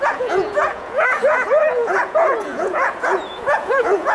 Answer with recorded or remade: remade